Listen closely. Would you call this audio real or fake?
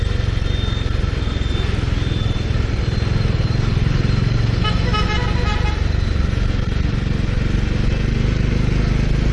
real